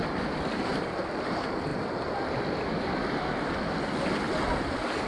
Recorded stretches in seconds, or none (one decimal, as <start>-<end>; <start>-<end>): 0.0-5.1